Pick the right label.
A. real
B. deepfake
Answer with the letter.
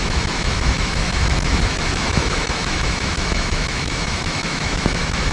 B